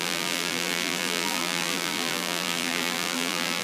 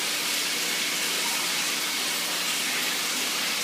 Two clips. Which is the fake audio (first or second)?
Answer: first